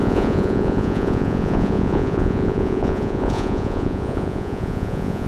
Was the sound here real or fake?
fake